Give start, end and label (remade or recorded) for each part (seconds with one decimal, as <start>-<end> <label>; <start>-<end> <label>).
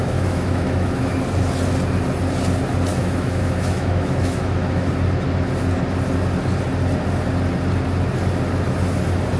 0.0-1.1 remade; 1.1-2.9 recorded; 2.9-4.9 remade; 4.9-9.4 recorded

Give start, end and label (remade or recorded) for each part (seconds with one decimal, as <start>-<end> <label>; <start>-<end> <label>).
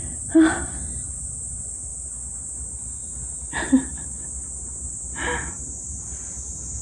0.0-6.8 recorded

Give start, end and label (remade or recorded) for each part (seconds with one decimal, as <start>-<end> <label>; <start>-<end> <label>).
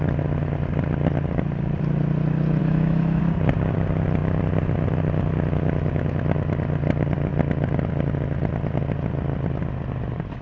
0.0-2.6 recorded; 2.6-3.2 remade; 3.2-10.4 recorded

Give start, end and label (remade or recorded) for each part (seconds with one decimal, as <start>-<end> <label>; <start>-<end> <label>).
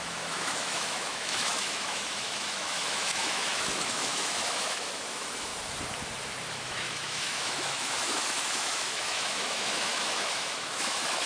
0.0-5.5 remade; 5.5-6.5 recorded; 6.5-11.3 remade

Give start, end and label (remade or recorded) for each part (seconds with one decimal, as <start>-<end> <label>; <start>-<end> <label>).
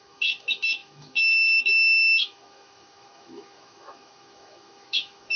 0.0-5.4 remade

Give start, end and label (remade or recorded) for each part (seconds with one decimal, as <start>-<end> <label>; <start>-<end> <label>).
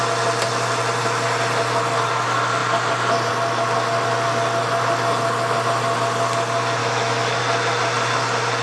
0.0-6.8 recorded; 6.8-7.4 remade; 7.4-8.6 recorded